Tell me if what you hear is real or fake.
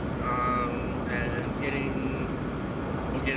real